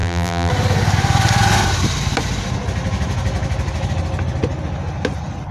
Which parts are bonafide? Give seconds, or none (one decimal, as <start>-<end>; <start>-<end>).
0.5-5.5